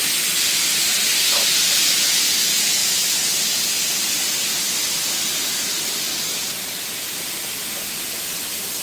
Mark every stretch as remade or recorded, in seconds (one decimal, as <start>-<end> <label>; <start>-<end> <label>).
0.0-1.5 recorded; 1.5-2.3 remade; 2.3-2.8 recorded; 2.8-3.4 remade; 3.4-6.3 recorded; 6.3-8.1 remade; 8.1-8.8 recorded